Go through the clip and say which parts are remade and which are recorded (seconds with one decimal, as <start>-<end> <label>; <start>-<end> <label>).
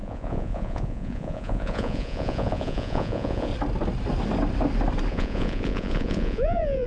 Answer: 0.0-3.5 remade; 3.5-5.1 recorded; 5.1-6.9 remade